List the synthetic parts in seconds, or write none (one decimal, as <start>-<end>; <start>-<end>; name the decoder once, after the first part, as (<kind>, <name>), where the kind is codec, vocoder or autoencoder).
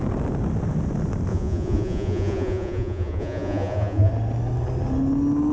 1.3-4.1 (vocoder, Vocos)